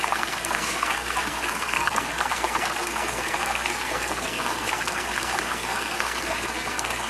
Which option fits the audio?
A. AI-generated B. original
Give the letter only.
A